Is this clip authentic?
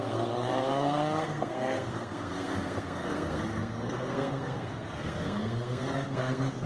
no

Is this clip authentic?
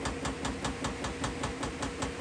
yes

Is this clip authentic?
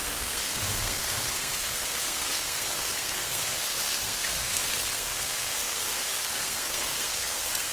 no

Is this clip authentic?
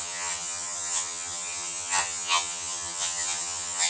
no